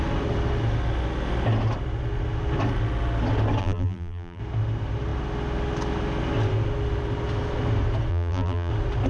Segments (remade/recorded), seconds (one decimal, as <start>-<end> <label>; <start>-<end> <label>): 0.0-3.6 recorded; 3.6-4.4 remade; 4.4-8.1 recorded; 8.1-8.7 remade; 8.7-9.1 recorded